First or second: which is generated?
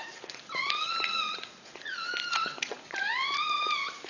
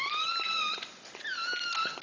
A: first